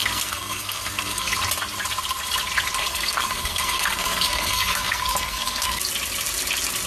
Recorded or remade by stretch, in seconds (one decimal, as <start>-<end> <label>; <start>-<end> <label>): 0.0-1.3 remade; 1.3-2.8 recorded; 2.8-5.8 remade; 5.8-6.9 recorded